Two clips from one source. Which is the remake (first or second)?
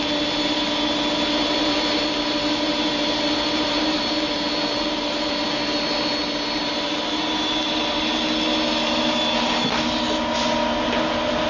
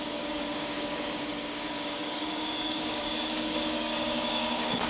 second